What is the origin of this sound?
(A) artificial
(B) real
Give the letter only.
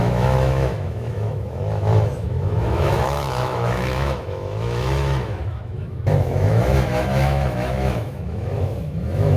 A